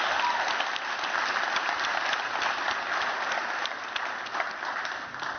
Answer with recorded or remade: recorded